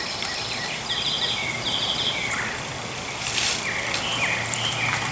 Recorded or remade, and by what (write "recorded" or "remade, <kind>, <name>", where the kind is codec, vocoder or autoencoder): remade, vocoder, BigVGAN v2